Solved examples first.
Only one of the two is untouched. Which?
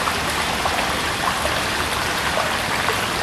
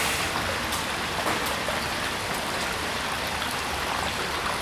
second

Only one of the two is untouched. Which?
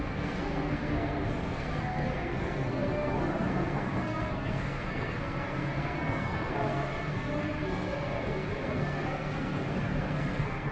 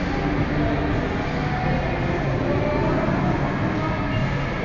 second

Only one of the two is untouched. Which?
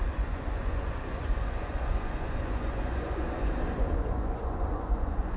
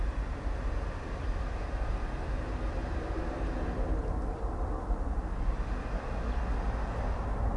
second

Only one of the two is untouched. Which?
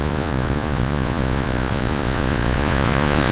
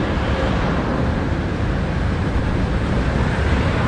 second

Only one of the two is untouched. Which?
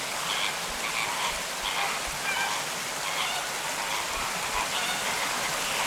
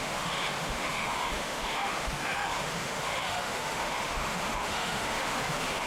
first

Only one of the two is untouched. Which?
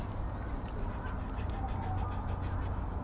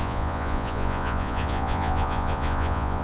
first